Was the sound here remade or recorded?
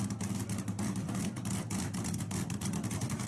recorded